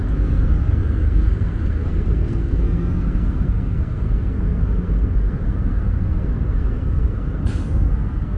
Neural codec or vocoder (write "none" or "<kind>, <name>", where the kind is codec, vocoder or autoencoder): codec, SNAC